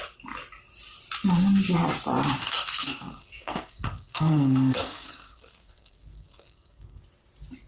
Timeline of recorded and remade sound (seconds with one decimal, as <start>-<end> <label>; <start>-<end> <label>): 0.0-2.4 recorded; 2.4-7.0 remade; 7.0-7.7 recorded